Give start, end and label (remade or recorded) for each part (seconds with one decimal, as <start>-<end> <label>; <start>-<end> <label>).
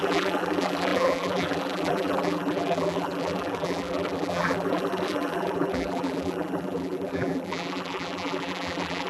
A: 0.0-9.1 remade